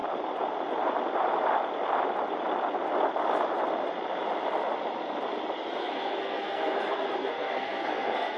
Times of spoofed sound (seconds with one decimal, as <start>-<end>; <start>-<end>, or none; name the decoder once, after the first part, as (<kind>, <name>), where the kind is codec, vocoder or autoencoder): 5.8-8.4 (codec, SNAC)